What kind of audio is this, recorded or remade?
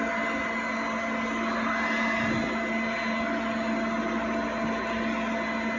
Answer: recorded